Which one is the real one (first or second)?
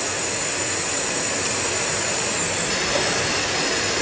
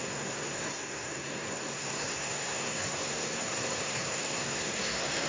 first